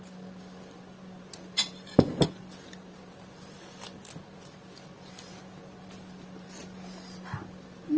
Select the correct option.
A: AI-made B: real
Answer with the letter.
B